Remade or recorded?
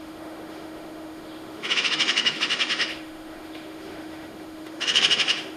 remade